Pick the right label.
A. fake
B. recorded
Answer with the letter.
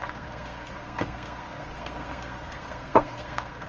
A